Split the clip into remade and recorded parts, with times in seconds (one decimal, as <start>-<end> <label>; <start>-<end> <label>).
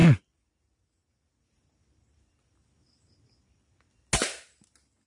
0.0-5.1 recorded